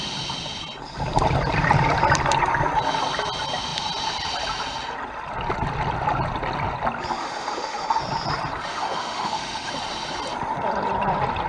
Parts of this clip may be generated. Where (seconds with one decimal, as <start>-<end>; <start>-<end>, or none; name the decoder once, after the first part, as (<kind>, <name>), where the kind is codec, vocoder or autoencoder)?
7.2-8.0 (autoencoder, DAC-VAE); 8.7-9.7